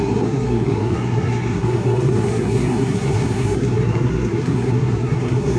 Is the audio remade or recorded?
remade